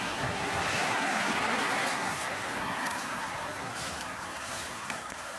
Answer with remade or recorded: remade